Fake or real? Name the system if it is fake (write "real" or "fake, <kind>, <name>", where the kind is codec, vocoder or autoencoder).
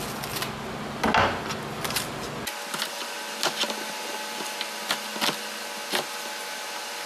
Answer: real